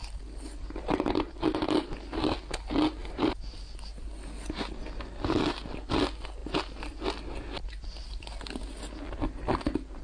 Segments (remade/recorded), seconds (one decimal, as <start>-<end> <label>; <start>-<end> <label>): 0.0-3.0 recorded; 3.0-3.6 remade; 3.6-10.0 recorded